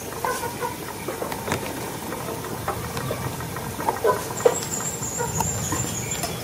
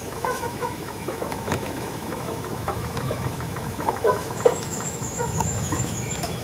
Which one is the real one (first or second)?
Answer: first